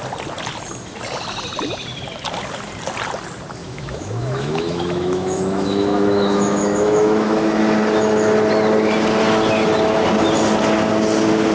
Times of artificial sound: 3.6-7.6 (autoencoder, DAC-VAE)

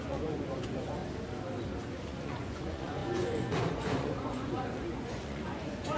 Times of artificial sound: 0.0-1.0 (vocoder, Vocos); 2.0-6.0

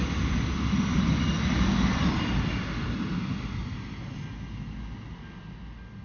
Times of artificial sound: none

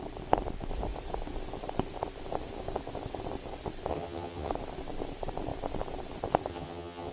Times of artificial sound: 3.9-4.5 (vocoder, HiFi-GAN); 6.5-7.1

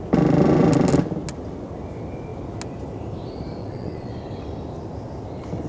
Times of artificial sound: 3.6-4.1 (vocoder, WaveNeXt)